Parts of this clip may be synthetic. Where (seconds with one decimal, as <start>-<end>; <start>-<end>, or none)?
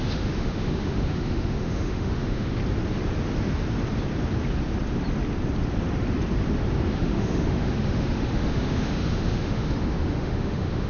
0.0-2.6; 6.9-10.9